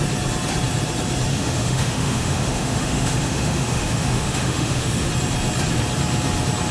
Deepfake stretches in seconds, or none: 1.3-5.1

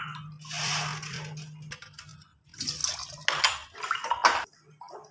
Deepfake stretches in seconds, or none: none